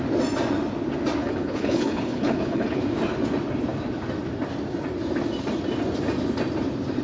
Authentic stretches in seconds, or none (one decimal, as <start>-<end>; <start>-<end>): 0.0-1.2; 2.8-7.0